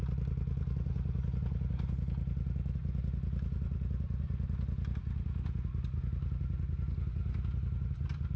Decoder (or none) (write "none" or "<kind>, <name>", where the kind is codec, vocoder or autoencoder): none